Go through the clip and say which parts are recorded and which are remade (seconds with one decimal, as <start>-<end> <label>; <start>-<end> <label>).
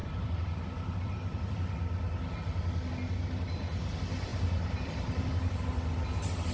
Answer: 0.0-1.8 remade; 1.8-4.3 recorded; 4.3-6.5 remade